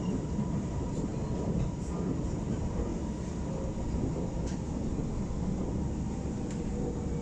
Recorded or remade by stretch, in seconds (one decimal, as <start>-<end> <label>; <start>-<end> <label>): 0.0-1.1 remade; 1.1-2.2 recorded; 2.2-2.9 remade; 2.9-7.2 recorded